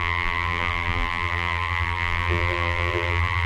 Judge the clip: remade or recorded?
remade